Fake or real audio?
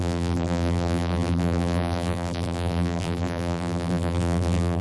fake